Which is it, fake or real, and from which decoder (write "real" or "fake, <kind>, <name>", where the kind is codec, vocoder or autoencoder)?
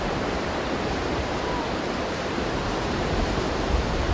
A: fake, vocoder, BigVGAN v2